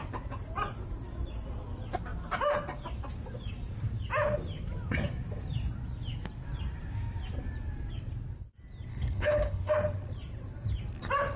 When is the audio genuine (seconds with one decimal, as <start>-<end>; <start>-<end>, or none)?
0.0-8.9; 9.7-11.4